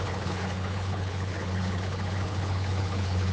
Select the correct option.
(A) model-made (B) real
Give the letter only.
A